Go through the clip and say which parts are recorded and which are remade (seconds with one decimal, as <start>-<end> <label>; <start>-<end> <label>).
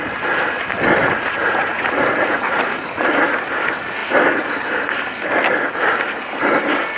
0.0-1.4 recorded; 1.4-3.1 remade; 3.1-7.0 recorded